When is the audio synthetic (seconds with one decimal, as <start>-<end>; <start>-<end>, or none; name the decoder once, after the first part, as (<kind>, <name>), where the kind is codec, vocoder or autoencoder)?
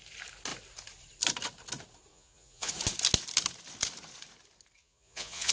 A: 2.1-2.7 (vocoder, Vocos); 4.8-5.5